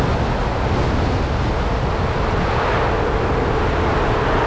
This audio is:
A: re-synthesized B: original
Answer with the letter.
B